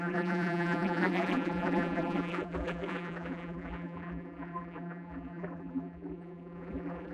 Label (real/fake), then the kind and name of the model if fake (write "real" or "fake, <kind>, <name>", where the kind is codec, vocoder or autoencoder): fake, vocoder, BigVGAN v2